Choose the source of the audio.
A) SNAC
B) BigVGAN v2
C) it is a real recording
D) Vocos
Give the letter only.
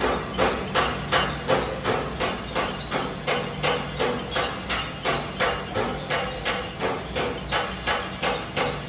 C